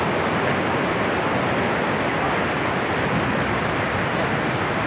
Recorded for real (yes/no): yes